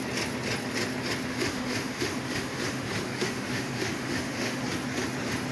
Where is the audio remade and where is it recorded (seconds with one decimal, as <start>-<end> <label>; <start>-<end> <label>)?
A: 0.0-1.3 recorded; 1.3-4.6 remade; 4.6-5.5 recorded